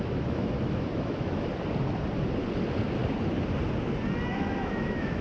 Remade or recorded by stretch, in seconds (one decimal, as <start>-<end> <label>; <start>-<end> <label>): 0.0-1.5 remade; 1.5-4.3 recorded; 4.3-5.2 remade